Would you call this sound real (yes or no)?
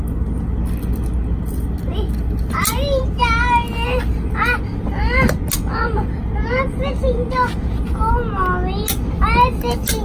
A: yes